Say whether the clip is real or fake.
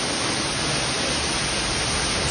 real